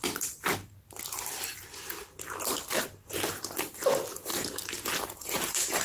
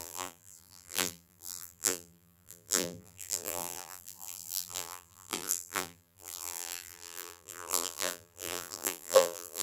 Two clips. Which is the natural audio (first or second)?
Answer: first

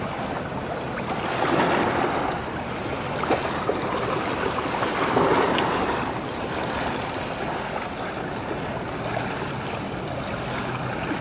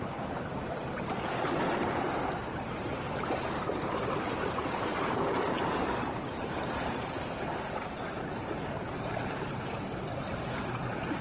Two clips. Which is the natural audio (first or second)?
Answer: first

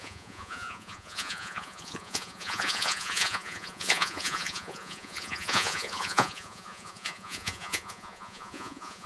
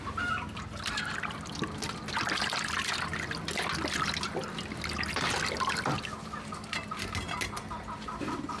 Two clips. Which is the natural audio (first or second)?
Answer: second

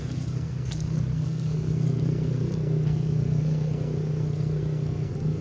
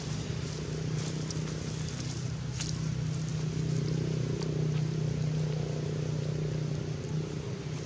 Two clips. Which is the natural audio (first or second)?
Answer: second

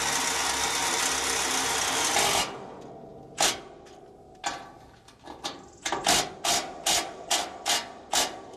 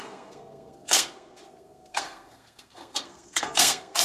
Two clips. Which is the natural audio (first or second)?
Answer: first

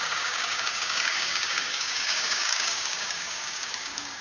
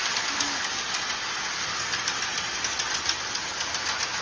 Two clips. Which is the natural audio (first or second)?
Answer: second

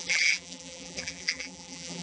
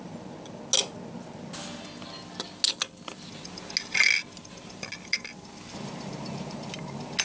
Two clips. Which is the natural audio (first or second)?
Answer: second